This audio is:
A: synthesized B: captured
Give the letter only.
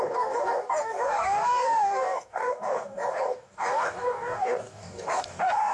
A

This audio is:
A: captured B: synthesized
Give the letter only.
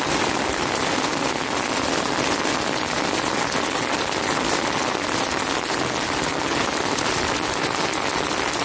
A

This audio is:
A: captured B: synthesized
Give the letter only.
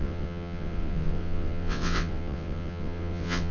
B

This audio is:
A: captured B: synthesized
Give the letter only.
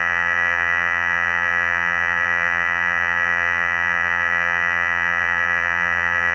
B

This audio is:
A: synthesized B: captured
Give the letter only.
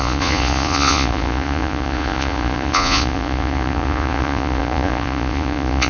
A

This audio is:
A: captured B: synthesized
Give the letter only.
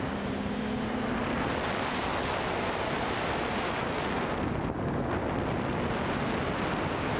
A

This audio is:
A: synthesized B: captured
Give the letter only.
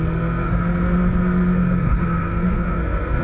A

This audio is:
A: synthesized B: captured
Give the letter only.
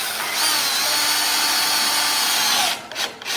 B